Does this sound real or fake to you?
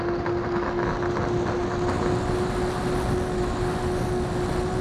real